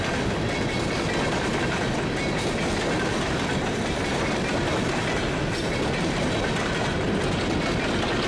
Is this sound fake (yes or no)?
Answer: no